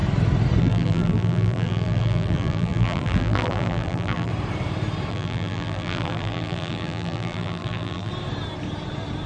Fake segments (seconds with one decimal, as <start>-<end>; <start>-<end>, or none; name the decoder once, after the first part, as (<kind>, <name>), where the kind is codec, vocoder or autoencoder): 0.6-4.3 (vocoder, BigVGAN v2); 5.1-8.1